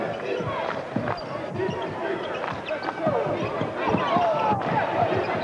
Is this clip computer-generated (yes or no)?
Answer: no